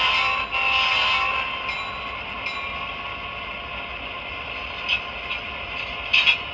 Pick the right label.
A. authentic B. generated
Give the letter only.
A